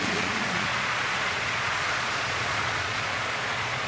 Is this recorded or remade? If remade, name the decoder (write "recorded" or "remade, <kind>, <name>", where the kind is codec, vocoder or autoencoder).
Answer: remade, vocoder, Vocos